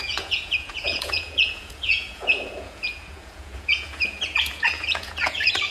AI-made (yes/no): yes